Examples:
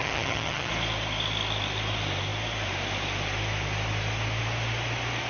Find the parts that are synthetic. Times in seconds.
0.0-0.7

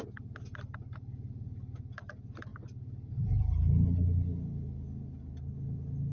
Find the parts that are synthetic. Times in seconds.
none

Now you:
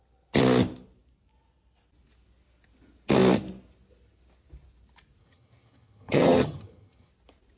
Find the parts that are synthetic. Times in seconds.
5.2-7.1

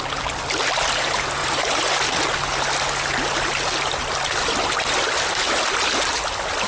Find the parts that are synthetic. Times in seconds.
none

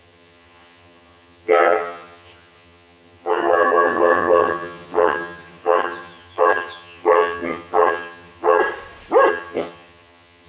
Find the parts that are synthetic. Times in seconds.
0.0-8.6; 9.3-10.5